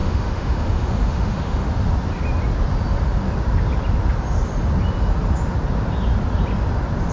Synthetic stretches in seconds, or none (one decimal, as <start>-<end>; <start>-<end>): 0.0-1.7